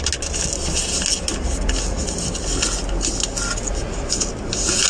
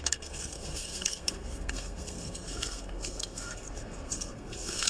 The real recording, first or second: first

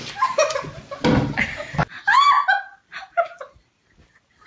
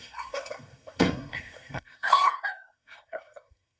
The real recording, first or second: first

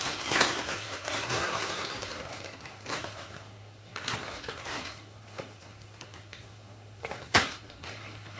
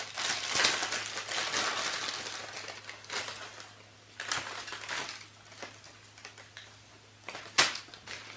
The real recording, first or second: second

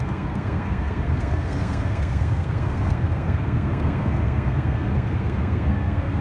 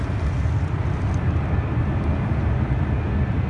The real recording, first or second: second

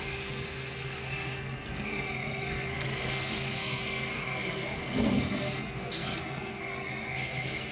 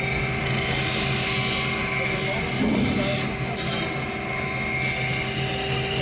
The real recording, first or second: second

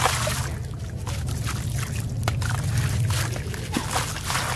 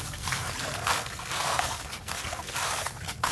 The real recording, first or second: first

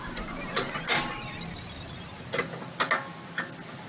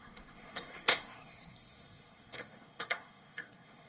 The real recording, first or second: first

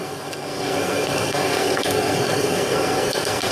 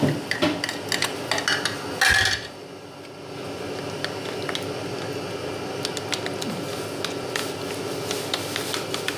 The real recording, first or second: second